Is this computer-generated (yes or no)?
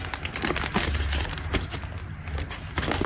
no